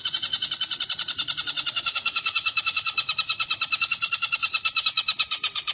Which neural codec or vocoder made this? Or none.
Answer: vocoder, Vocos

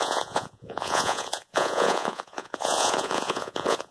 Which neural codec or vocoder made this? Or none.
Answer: vocoder, Vocos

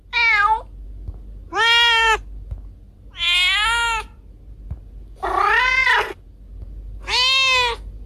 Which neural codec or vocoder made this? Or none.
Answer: none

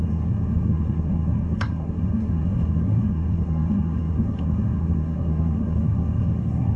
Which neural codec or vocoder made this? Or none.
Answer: codec, SNAC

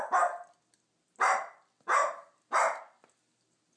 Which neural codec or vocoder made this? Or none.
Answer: none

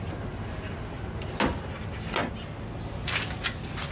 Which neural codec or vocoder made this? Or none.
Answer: none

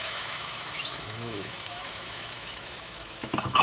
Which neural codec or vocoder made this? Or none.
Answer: autoencoder, DAC-VAE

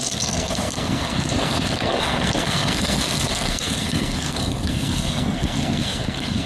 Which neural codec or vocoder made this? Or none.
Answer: codec, SNAC